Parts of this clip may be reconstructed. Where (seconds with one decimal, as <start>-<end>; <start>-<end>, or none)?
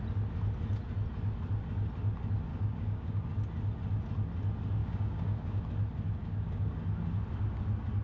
2.5-3.2; 4.8-5.6; 6.2-6.8